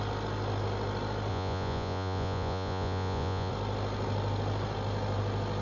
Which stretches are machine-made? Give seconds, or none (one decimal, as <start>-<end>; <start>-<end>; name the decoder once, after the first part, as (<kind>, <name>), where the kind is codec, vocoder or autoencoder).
1.3-3.5 (vocoder, Vocos)